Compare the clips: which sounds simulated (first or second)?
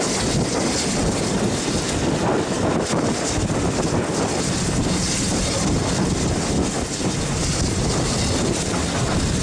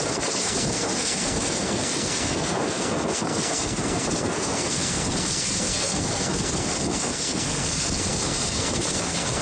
second